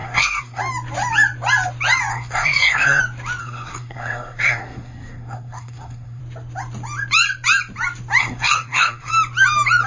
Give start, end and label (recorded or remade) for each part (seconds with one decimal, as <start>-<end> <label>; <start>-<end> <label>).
0.0-0.6 remade; 0.6-2.1 recorded; 2.1-3.0 remade; 3.0-3.4 recorded; 3.4-6.2 remade; 6.2-8.2 recorded; 8.2-9.1 remade; 9.1-9.9 recorded